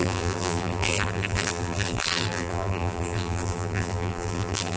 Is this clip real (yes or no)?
no